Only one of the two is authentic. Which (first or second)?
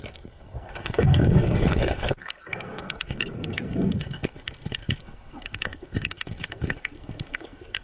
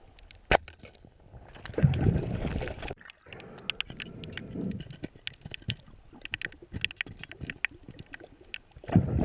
second